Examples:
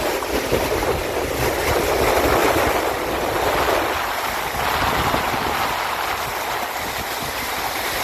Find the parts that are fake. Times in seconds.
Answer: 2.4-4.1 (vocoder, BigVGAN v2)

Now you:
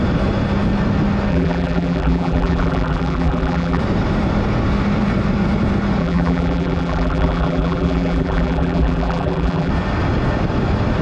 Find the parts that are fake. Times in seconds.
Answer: 1.3-3.8 (vocoder, BigVGAN v2); 6.0-9.7

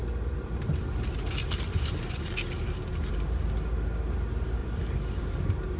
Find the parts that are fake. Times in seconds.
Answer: 0.0-0.8 (vocoder, BigVGAN v2); 1.4-2.8; 4.6-5.2

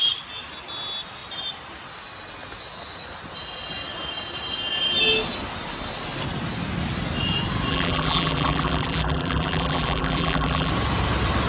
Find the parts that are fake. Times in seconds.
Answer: 7.7-10.7 (vocoder, BigVGAN v2)

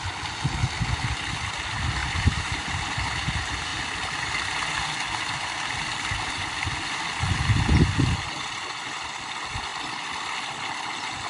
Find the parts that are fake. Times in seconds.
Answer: 2.0-2.8 (vocoder, BigVGAN v2)